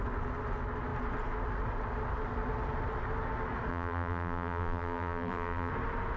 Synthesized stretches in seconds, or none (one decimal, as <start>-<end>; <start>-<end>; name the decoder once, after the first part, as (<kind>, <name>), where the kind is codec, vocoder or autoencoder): 3.7-5.7 (vocoder, BigVGAN v2)